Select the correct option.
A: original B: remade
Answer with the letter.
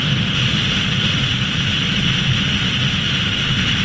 A